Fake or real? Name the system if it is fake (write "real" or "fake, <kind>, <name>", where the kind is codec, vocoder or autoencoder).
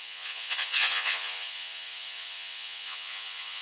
fake, vocoder, Vocos